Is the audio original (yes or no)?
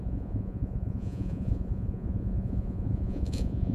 no